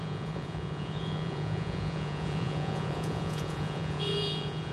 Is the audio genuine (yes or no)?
no